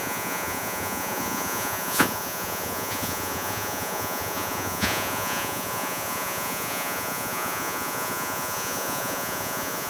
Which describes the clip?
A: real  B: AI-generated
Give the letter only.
B